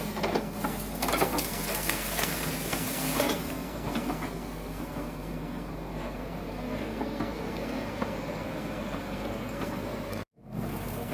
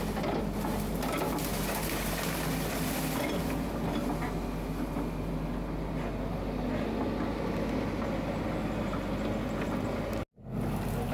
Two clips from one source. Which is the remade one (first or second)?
first